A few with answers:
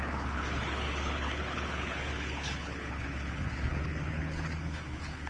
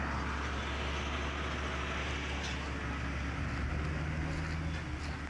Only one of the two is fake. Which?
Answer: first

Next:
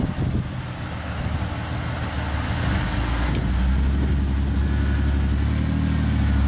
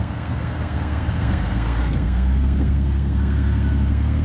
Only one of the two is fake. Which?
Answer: second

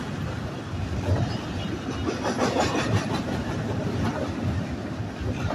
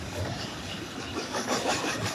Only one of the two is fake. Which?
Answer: second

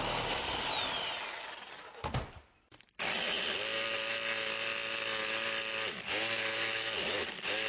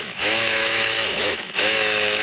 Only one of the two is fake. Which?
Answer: second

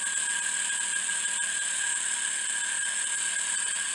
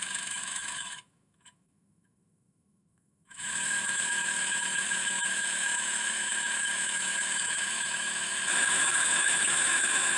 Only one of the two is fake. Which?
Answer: second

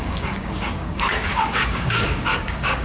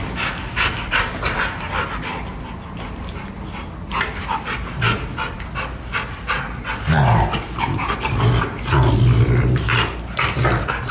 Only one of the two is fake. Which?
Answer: first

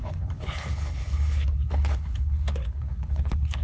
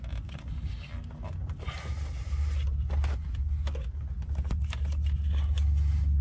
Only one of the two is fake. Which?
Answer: first